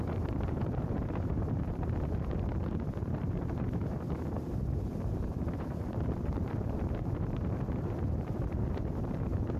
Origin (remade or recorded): remade